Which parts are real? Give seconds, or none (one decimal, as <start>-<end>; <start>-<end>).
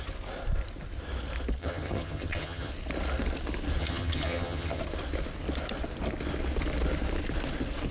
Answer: 0.0-1.6; 2.7-3.8; 4.8-7.9